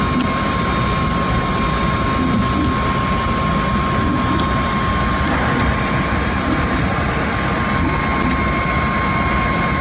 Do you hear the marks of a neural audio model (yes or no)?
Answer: no